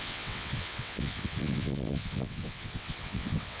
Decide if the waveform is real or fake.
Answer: fake